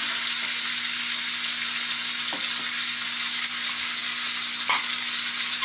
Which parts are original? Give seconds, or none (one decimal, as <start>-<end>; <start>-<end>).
0.0-5.6